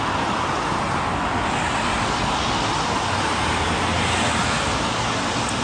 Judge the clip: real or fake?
real